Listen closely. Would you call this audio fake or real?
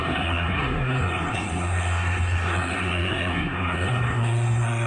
fake